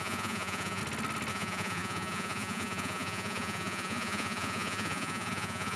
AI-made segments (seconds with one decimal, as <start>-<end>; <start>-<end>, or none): 0.0-0.8; 1.3-5.8

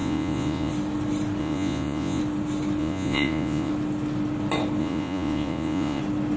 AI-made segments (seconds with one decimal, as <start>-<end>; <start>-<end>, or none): 0.0-0.7; 1.4-2.2; 2.8-3.7; 4.8-6.0

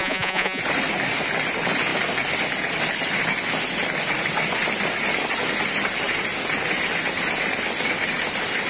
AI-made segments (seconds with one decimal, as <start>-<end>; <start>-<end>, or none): 0.0-0.6

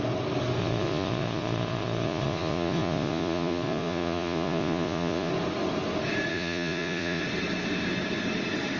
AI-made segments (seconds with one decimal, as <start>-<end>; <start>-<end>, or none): 0.6-5.3; 6.3-7.2

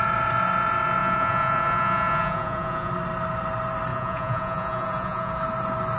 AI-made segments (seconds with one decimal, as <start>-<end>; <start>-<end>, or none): 1.0-2.9; 3.9-5.3

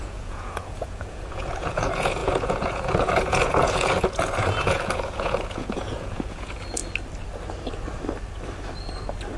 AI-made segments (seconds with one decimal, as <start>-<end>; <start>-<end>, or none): 0.0-6.8

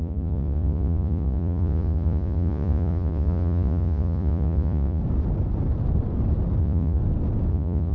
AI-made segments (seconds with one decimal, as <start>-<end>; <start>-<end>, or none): 0.0-5.0; 6.6-7.0; 7.5-7.9